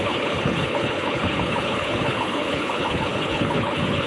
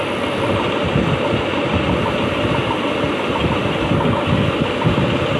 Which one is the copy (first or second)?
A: first